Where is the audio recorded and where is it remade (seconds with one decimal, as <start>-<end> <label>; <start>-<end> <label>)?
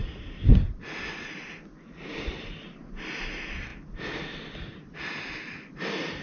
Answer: 0.0-6.2 recorded